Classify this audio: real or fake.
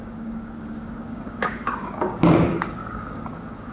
fake